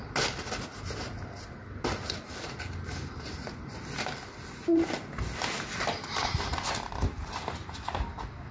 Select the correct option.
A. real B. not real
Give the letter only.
A